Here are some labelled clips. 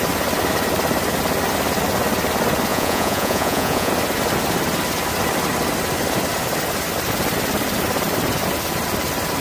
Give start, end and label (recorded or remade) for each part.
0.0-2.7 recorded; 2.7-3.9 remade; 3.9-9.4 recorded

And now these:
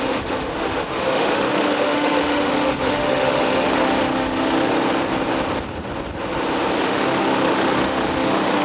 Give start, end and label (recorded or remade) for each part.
0.0-4.7 remade; 4.7-6.8 recorded; 6.8-8.6 remade

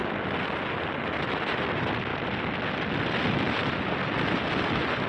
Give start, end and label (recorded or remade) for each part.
0.0-5.1 recorded